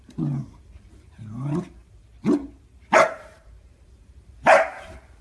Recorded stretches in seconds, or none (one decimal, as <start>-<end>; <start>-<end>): 2.1-2.8